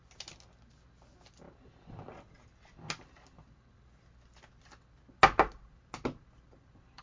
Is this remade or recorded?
recorded